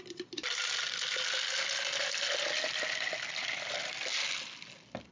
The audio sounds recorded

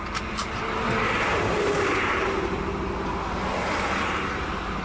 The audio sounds recorded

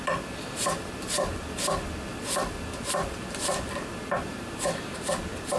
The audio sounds remade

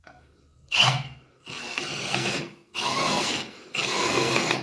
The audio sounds remade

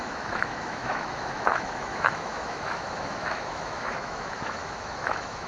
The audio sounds remade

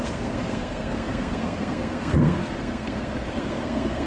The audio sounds remade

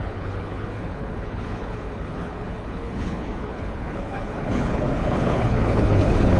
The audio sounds remade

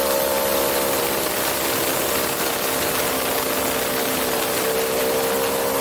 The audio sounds recorded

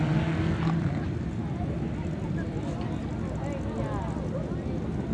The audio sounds recorded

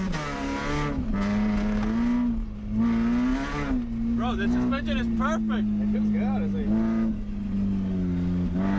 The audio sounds recorded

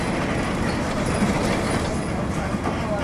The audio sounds recorded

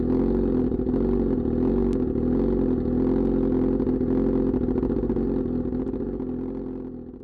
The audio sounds recorded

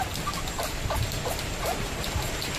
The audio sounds recorded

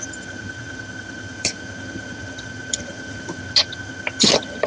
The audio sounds remade